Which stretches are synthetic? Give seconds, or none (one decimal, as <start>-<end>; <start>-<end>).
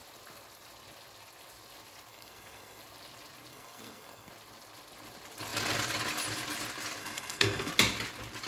2.1-2.8; 3.5-4.3; 7.0-7.7